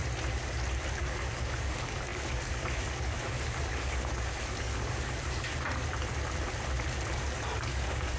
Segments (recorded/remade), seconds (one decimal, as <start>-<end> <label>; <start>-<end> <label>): 0.0-1.0 recorded; 1.0-5.5 remade; 5.5-7.7 recorded; 7.7-8.2 remade